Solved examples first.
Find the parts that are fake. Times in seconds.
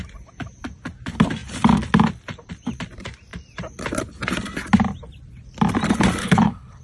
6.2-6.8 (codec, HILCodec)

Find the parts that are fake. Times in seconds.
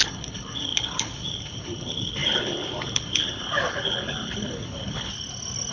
0.0-5.1 (codec, HILCodec)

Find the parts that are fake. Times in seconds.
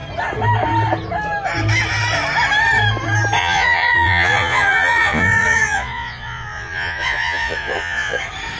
3.4-8.2 (vocoder, Vocos)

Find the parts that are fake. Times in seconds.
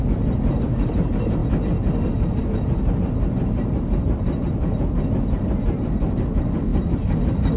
0.0-1.4 (vocoder, BigVGAN v2); 2.4-7.6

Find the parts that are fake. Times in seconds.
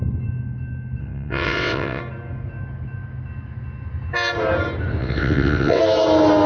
1.0-2.0 (vocoder, WaveNeXt); 5.0-5.8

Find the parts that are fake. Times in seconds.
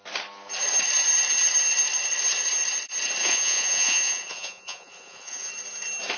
3.2-5.5 (vocoder, Vocos)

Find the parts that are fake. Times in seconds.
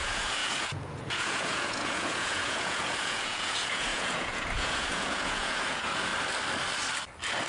0.0-6.1 (vocoder, Vocos)